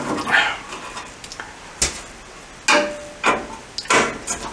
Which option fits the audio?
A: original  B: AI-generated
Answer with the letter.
A